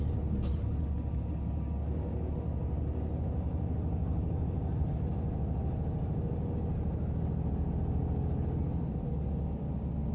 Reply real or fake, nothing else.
real